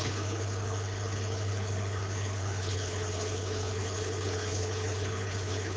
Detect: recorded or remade remade